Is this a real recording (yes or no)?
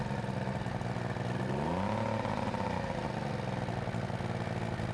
yes